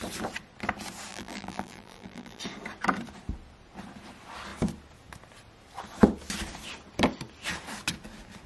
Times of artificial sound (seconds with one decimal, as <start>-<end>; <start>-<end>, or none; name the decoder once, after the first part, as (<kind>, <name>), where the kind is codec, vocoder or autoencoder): 1.1-2.4 (vocoder, BigVGAN v2)